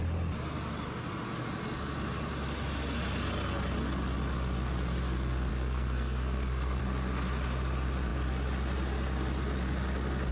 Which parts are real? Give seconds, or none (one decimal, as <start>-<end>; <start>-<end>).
0.0-5.5; 6.8-10.3